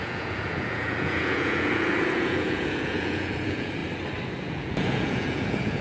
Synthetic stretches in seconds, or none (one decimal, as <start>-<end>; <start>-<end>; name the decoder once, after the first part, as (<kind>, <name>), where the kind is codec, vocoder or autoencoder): 0.0-3.8 (vocoder, Vocos); 4.4-5.8